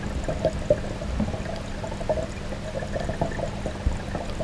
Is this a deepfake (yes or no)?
no